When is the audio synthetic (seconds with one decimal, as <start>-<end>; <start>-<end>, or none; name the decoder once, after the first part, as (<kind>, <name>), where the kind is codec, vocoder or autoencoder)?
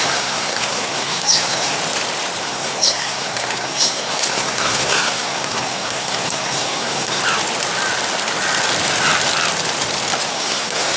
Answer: 0.0-1.8 (codec, SNAC); 2.4-7.2; 10.3-11.0